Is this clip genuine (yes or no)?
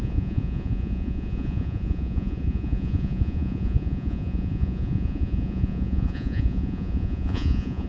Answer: no